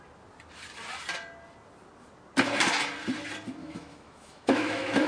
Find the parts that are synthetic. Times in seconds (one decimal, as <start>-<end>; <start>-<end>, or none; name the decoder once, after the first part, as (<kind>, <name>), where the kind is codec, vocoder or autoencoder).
3.6-5.1 (autoencoder, DAC-VAE)